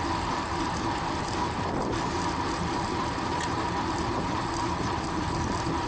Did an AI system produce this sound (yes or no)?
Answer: no